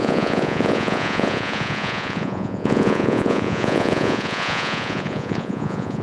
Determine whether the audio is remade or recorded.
remade